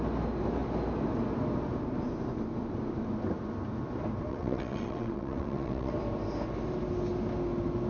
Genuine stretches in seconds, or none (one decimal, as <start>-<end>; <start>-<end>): 0.0-4.3; 5.9-7.9